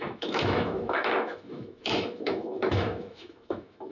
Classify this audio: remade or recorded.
remade